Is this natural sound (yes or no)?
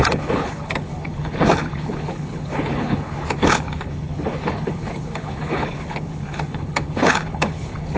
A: no